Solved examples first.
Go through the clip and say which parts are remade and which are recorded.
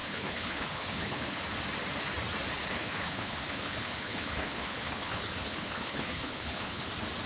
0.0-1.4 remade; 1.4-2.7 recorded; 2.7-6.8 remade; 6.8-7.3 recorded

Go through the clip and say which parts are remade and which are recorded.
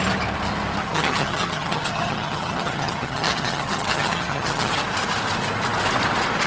0.0-0.8 recorded; 0.8-4.7 remade; 4.7-6.5 recorded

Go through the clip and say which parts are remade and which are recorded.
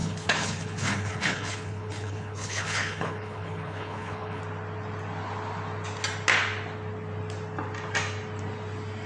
0.0-4.4 remade; 4.4-9.1 recorded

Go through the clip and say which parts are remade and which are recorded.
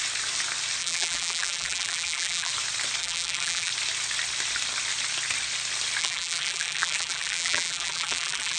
0.0-0.8 recorded; 0.8-2.5 remade; 2.5-3.0 recorded; 3.0-3.7 remade; 3.7-6.0 recorded; 6.0-8.6 remade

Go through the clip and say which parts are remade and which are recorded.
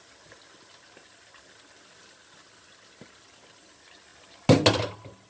0.0-5.3 recorded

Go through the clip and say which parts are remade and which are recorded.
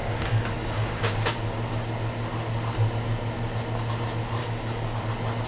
0.0-1.3 remade; 1.3-4.4 recorded; 4.4-5.0 remade; 5.0-5.5 recorded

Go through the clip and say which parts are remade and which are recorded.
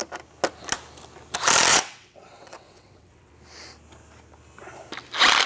0.0-1.7 recorded; 1.7-3.3 remade; 3.3-5.5 recorded